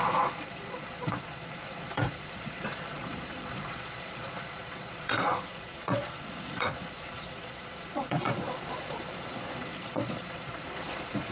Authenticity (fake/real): fake